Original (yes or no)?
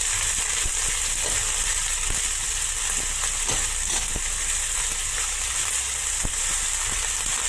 yes